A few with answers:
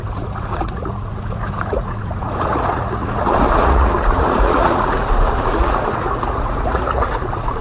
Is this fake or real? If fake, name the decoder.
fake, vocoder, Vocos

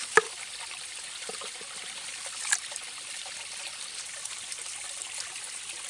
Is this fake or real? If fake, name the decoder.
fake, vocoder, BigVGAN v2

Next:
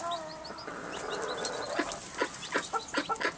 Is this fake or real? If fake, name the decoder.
real